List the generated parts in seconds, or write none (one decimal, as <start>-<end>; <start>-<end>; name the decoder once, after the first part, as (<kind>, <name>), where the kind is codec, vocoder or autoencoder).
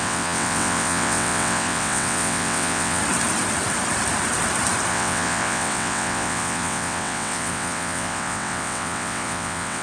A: 0.0-3.0 (vocoder, WaveNeXt); 4.9-9.8